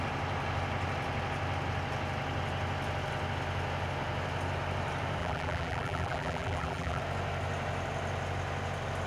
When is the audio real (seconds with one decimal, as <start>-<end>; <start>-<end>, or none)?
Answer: 0.0-5.2; 7.0-9.1